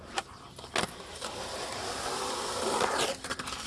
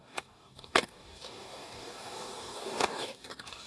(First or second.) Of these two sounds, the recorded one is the first